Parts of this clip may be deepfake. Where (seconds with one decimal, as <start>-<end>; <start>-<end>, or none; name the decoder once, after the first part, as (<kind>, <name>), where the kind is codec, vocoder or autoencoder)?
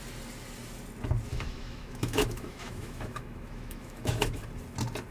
1.3-4.4 (autoencoder, DAC-VAE)